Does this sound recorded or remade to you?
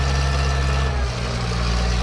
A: recorded